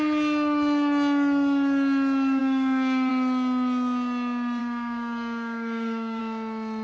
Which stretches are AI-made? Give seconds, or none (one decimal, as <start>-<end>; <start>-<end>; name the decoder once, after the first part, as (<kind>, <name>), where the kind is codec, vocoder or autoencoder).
2.4-3.1 (codec, DAC); 4.6-6.2